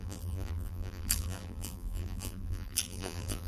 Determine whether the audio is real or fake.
fake